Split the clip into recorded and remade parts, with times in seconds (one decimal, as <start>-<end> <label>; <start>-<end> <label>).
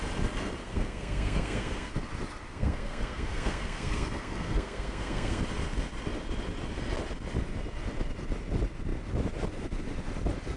0.0-0.6 recorded; 0.6-1.9 remade; 1.9-2.5 recorded; 2.5-5.4 remade; 5.4-10.6 recorded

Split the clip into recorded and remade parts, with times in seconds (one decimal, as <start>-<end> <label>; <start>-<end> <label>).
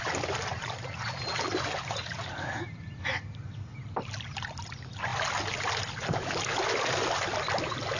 0.0-8.0 recorded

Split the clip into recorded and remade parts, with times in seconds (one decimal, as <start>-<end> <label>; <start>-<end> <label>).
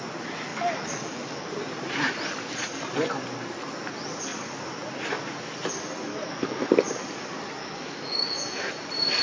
0.0-0.5 recorded; 0.5-1.5 remade; 1.5-6.1 recorded; 6.1-6.7 remade; 6.7-7.6 recorded; 7.6-8.7 remade; 8.7-9.2 recorded